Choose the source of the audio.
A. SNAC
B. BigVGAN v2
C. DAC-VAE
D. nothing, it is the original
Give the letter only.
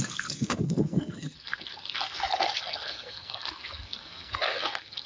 A